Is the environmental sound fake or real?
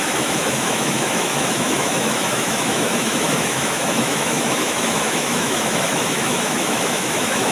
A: fake